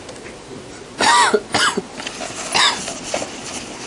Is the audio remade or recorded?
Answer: recorded